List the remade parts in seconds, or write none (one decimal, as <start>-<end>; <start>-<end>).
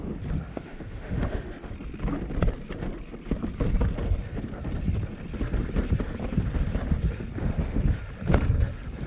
0.5-1.5